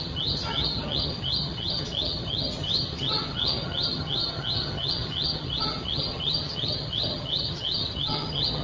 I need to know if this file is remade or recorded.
remade